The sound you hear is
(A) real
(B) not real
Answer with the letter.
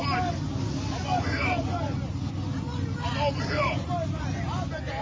A